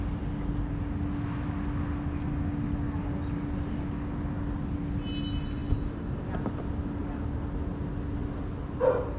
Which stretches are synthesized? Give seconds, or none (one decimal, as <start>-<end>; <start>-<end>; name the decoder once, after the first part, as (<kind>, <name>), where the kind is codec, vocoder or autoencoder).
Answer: none